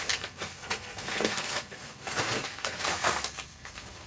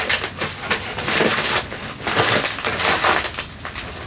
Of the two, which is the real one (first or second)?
second